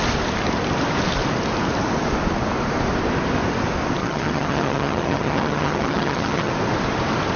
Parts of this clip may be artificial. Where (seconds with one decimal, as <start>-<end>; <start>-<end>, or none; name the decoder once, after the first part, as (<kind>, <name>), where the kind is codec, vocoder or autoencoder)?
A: 4.0-6.5 (vocoder, HiFi-GAN)